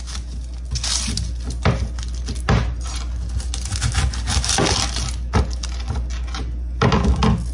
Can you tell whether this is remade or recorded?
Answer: recorded